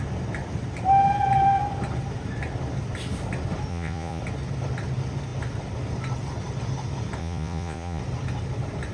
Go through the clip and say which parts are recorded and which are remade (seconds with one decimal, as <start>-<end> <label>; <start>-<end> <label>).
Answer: 0.0-3.7 recorded; 3.7-4.2 remade; 4.2-7.2 recorded; 7.2-8.0 remade; 8.0-8.9 recorded